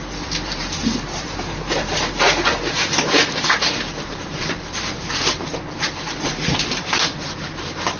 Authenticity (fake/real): fake